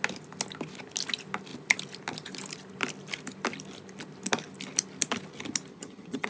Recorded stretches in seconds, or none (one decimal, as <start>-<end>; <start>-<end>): 0.0-5.7